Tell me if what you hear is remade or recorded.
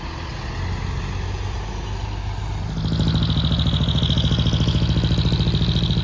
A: recorded